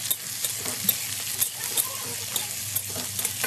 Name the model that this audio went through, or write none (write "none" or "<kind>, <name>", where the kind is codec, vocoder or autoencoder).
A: none